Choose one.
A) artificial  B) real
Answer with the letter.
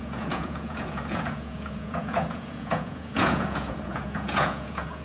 A